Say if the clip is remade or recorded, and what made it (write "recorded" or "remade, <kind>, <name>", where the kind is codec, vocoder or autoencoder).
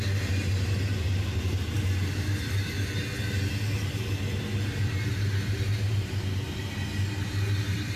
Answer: recorded